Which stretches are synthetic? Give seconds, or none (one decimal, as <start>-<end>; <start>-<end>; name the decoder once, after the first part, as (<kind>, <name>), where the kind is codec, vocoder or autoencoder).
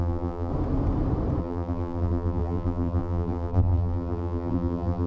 0.0-0.5 (vocoder, BigVGAN v2); 1.4-5.1